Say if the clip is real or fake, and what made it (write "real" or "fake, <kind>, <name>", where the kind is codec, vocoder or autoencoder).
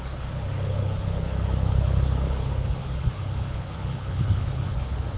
fake, codec, HILCodec